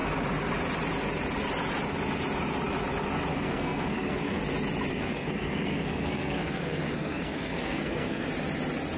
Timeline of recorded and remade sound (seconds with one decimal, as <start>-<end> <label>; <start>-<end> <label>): 0.0-3.3 recorded; 3.3-4.4 remade; 4.4-4.9 recorded; 4.9-8.3 remade; 8.3-9.0 recorded